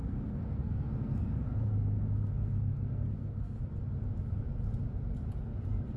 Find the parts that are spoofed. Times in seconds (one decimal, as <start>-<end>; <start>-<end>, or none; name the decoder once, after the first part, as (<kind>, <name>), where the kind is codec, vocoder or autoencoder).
0.0-3.6 (codec, SNAC)